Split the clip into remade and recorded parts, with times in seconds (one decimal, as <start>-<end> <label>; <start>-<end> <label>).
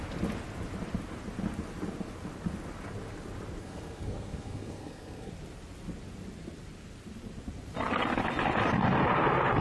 0.0-3.6 recorded; 3.6-5.3 remade; 5.3-9.6 recorded